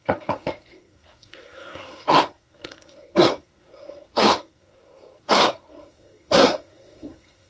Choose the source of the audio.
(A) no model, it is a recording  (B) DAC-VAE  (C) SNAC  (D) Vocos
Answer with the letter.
C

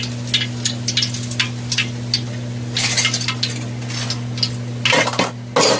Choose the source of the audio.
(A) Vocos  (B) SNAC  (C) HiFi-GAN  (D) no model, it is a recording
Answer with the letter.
D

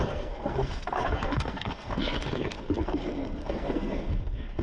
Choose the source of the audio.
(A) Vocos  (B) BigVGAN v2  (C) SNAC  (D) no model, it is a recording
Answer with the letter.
C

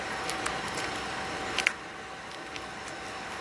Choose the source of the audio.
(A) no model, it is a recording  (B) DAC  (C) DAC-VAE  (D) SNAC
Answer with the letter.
A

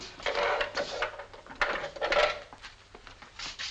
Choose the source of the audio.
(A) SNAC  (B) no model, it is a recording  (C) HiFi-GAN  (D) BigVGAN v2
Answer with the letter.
B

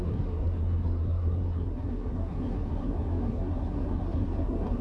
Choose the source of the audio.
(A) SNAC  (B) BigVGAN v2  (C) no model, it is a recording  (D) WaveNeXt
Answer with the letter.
A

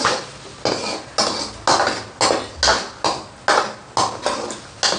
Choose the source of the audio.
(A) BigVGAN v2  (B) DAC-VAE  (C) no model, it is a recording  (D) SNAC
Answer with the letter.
C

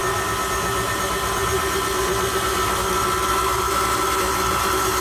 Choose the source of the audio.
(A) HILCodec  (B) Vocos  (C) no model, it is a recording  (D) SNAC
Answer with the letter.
C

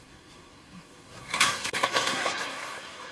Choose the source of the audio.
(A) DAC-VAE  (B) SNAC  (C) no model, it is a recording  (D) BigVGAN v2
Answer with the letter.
B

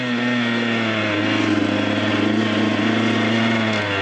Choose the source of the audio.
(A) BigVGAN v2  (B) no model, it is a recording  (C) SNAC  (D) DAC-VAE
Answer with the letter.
B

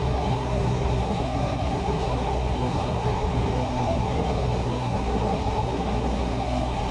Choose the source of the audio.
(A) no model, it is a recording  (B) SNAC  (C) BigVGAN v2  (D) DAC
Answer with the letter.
B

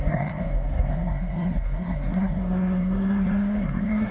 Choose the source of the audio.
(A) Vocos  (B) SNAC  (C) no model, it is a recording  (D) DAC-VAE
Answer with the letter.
B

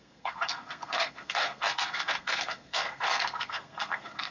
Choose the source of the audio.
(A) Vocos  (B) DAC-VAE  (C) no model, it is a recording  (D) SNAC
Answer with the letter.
D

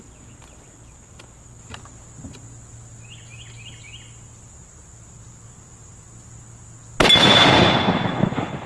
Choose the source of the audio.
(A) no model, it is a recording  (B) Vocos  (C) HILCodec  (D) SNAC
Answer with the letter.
A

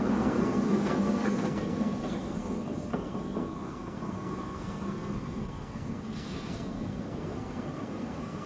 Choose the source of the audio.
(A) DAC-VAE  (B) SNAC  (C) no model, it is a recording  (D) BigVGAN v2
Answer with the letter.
B